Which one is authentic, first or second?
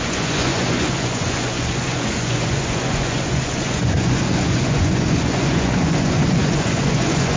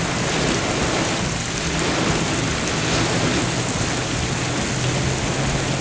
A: second